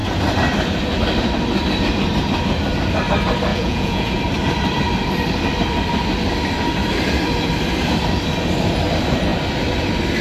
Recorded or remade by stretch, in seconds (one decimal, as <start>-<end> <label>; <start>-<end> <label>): 0.0-3.5 recorded; 3.5-4.2 remade; 4.2-10.2 recorded